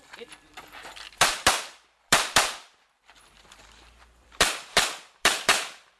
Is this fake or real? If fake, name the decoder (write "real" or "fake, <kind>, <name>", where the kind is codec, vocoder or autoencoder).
fake, vocoder, BigVGAN v2